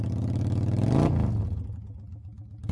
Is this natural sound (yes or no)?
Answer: yes